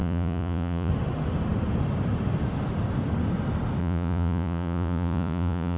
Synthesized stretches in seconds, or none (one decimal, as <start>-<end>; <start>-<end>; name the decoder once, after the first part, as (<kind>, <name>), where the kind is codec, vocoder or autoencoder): 0.0-0.9 (vocoder, Vocos); 3.8-5.8